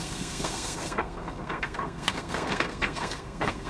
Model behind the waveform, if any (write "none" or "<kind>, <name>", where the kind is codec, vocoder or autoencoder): codec, SNAC